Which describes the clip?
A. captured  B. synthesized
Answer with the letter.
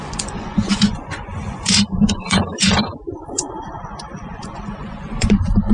B